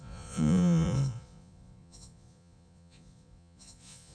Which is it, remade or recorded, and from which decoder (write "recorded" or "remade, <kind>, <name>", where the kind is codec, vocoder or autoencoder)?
remade, vocoder, Vocos